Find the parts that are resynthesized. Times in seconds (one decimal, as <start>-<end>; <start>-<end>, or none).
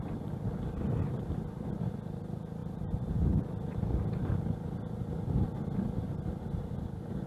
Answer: 2.6-3.4